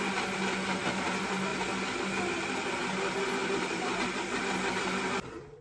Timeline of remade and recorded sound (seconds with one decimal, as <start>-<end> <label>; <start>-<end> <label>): 0.0-3.4 recorded; 3.4-4.4 remade; 4.4-5.6 recorded